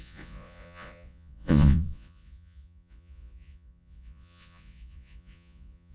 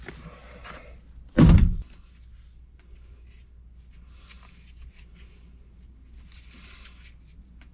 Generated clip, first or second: first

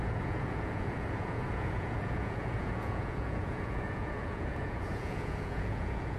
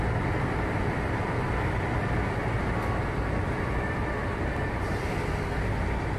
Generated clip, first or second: first